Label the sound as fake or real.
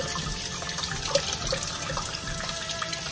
real